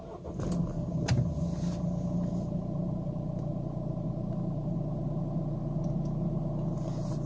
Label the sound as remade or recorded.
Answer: recorded